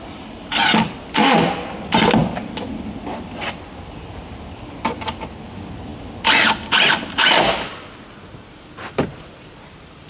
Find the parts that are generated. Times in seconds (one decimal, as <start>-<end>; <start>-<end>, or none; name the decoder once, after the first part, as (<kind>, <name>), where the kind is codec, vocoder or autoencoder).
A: none